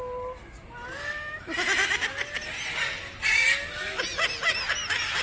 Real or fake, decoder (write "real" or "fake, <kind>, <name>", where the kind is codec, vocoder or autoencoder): real